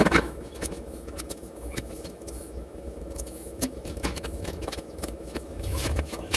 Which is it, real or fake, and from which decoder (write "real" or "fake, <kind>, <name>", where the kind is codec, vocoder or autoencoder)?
fake, autoencoder, DAC-VAE